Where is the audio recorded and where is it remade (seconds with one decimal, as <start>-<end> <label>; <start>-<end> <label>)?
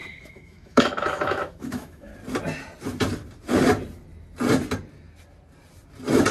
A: 0.0-2.1 remade; 2.1-6.3 recorded